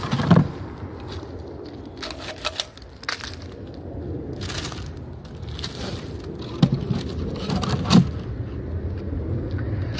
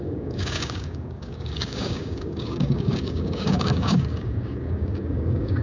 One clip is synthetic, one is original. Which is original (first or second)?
first